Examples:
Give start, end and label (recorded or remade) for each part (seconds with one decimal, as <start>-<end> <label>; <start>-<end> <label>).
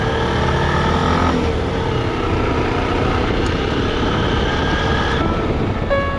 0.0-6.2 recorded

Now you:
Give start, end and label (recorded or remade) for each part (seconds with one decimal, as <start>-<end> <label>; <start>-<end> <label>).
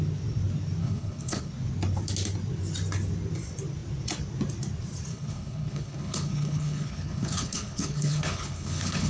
0.0-0.8 recorded; 0.8-1.5 remade; 1.5-5.1 recorded; 5.1-9.1 remade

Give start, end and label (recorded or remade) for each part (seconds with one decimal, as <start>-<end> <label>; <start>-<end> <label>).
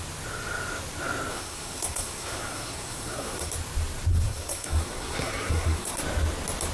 0.0-1.3 recorded; 1.3-3.5 remade; 3.5-4.1 recorded; 4.1-6.0 remade; 6.0-6.7 recorded